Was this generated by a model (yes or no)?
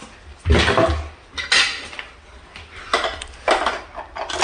no